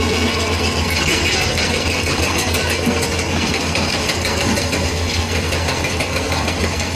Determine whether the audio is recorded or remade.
remade